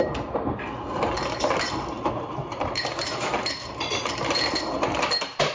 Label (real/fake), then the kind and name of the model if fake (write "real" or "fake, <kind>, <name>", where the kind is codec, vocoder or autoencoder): real